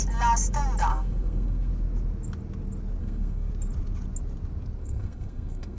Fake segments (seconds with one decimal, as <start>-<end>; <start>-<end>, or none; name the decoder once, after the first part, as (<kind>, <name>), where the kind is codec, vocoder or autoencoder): 0.9-1.7 (codec, SNAC); 3.0-3.5; 4.8-5.8